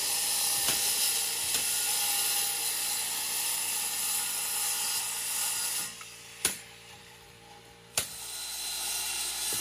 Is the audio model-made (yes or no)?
yes